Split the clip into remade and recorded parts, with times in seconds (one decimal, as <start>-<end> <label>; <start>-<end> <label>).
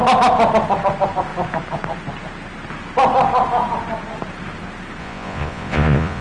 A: 0.0-5.0 recorded; 5.0-6.2 remade